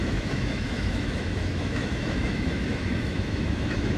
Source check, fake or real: fake